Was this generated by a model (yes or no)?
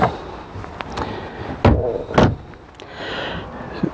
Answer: no